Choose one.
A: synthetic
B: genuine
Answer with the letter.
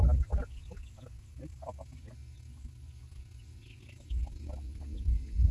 B